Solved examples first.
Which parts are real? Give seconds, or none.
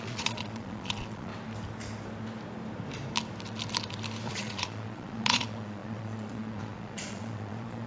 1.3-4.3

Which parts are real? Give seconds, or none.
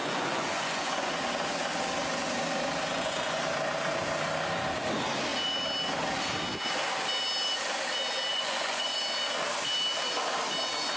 1.1-2.9; 3.4-8.3; 9.0-11.0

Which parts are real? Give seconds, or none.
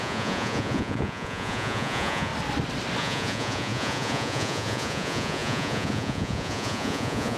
2.3-3.0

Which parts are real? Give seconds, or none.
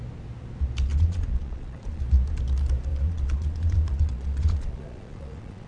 0.0-0.9; 2.0-2.9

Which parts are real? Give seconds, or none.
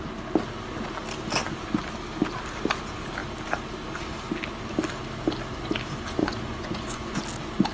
0.0-6.2; 7.2-7.7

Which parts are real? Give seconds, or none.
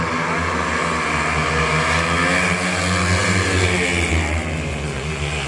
0.0-4.7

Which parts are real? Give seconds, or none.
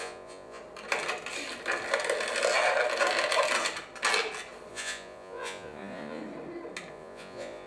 0.6-4.7; 6.2-6.9